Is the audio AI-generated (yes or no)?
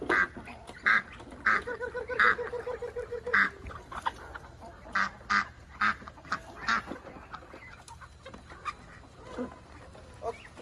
no